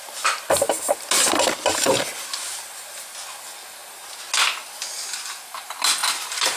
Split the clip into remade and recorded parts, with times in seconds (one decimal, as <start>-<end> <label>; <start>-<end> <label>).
0.0-6.0 recorded; 6.0-6.6 remade

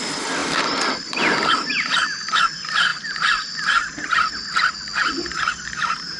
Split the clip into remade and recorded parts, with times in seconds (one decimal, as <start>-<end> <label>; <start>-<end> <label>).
0.0-0.4 recorded; 0.4-2.4 remade; 2.4-2.9 recorded; 2.9-4.7 remade; 4.7-6.2 recorded

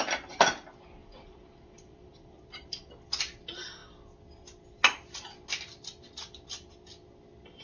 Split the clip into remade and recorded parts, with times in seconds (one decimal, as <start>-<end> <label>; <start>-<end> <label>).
0.0-1.0 recorded; 1.0-2.9 remade; 2.9-7.6 recorded

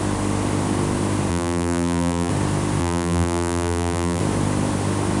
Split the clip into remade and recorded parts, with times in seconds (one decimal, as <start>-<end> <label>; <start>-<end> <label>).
0.0-1.3 recorded; 1.3-2.3 remade; 2.3-2.8 recorded; 2.8-4.2 remade; 4.2-5.2 recorded

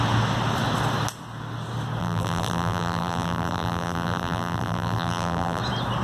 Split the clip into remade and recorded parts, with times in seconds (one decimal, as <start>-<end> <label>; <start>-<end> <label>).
0.0-2.0 recorded; 2.0-5.6 remade; 5.6-6.0 recorded